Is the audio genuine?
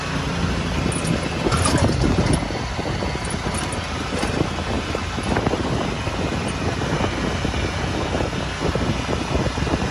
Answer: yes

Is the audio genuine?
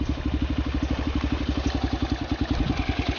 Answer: yes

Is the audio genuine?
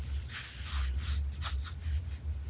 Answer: yes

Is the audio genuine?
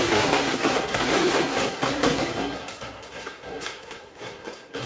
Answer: no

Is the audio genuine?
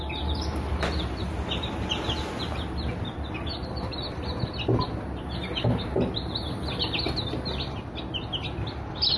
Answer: yes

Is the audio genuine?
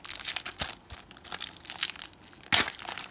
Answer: yes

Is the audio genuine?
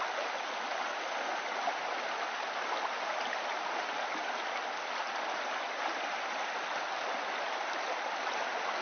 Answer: yes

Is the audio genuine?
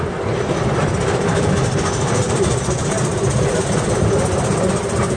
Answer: yes